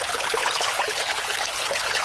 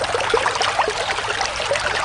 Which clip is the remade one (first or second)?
first